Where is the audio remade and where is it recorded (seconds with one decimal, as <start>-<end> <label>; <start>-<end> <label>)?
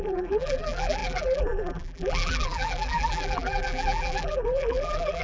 0.0-5.2 remade